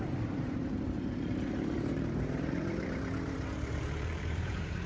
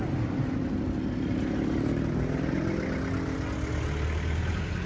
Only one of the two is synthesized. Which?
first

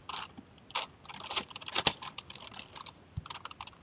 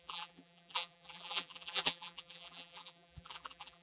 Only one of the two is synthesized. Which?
second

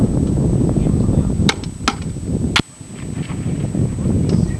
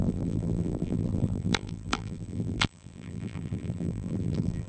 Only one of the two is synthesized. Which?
second